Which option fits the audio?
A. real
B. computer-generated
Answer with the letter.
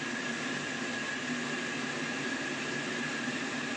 A